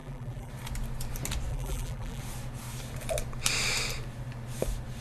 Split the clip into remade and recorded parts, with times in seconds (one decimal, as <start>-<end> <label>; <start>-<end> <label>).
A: 0.0-0.5 remade; 0.5-1.5 recorded; 1.5-2.2 remade; 2.2-5.0 recorded